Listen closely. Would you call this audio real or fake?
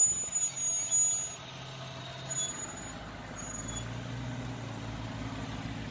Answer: real